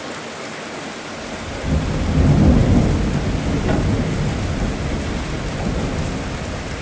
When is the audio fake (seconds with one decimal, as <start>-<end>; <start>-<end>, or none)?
none

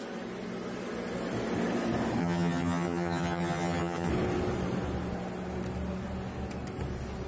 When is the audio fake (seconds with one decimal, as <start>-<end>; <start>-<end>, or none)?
2.2-4.1

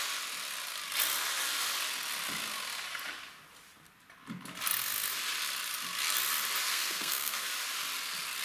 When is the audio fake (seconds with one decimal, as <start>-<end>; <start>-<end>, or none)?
6.7-7.5